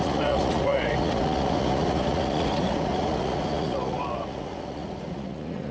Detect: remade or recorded remade